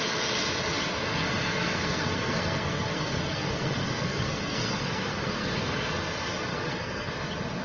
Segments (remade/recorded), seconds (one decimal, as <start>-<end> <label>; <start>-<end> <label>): 0.0-1.1 recorded; 1.1-5.5 remade; 5.5-6.5 recorded; 6.5-7.1 remade; 7.1-7.6 recorded